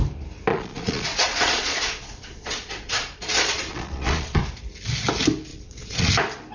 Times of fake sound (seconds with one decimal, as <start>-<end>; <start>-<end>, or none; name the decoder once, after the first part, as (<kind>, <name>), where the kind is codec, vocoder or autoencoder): 0.5-4.4 (vocoder, Vocos); 5.5-6.1